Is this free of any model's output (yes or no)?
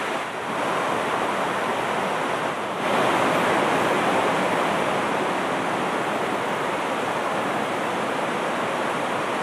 yes